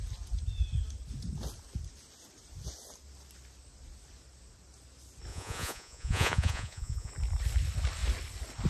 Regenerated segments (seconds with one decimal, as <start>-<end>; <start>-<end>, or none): 5.3-7.1